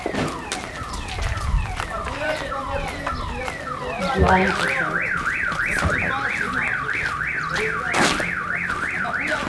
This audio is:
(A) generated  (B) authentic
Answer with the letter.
B